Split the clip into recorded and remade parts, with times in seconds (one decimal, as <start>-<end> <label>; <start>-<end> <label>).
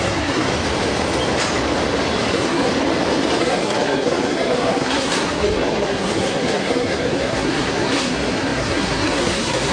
0.0-0.5 remade; 0.5-2.3 recorded; 2.3-2.7 remade; 2.7-3.4 recorded; 3.4-9.7 remade